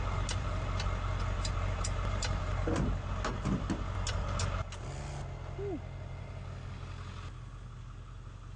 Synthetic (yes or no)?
no